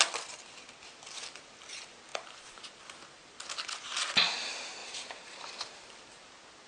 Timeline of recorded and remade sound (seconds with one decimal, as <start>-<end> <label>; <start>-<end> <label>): 0.0-2.1 recorded; 2.1-2.6 remade; 2.6-4.8 recorded; 4.8-5.5 remade; 5.5-6.7 recorded